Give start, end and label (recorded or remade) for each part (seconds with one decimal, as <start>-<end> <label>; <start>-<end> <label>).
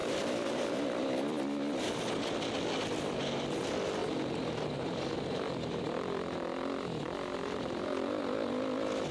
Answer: 0.0-1.9 remade; 1.9-4.0 recorded; 4.0-6.2 remade; 6.2-9.1 recorded